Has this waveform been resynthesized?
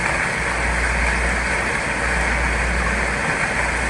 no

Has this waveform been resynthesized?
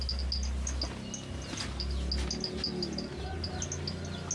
no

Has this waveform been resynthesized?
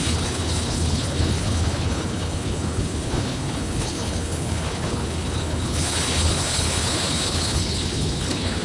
yes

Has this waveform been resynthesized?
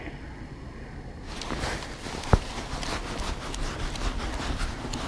no